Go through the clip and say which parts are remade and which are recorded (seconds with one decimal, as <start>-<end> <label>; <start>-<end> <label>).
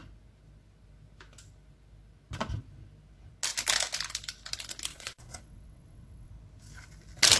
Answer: 0.0-4.9 recorded; 4.9-6.3 remade; 6.3-7.4 recorded